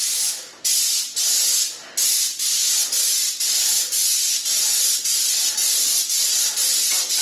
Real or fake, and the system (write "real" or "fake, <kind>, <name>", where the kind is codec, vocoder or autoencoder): real